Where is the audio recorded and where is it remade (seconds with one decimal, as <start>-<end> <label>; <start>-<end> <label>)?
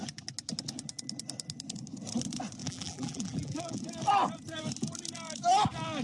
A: 0.0-2.6 recorded; 2.6-3.8 remade; 3.8-6.0 recorded